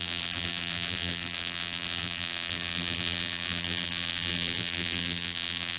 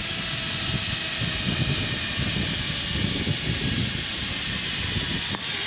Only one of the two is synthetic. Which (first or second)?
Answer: first